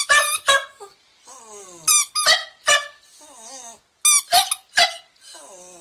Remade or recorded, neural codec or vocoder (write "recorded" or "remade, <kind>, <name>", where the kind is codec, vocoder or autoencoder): recorded